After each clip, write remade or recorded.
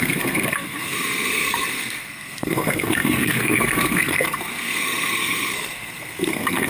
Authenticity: remade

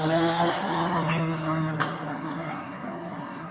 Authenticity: remade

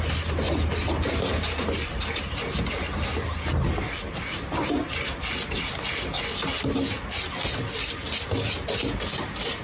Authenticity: recorded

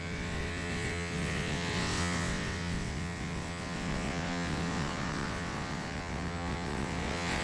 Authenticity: remade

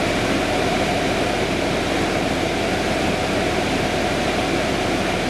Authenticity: recorded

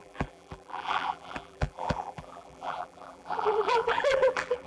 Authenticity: remade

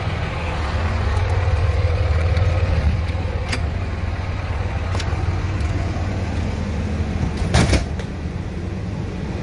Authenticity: remade